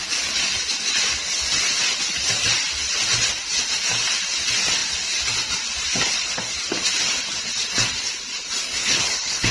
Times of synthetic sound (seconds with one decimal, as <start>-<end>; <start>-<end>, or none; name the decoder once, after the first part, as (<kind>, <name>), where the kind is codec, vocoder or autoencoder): 8.8-9.5 (codec, HILCodec)